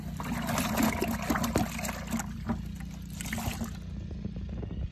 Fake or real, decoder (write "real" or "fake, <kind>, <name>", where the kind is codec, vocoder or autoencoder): real